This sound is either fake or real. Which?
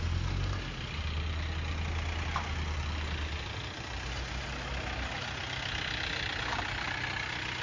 real